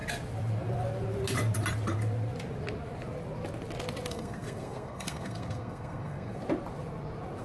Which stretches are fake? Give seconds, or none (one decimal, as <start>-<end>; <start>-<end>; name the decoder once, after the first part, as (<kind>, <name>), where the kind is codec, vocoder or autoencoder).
4.1-6.4 (codec, SNAC)